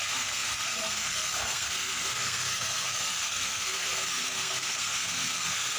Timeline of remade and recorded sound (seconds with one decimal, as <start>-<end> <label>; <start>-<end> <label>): 0.0-5.8 remade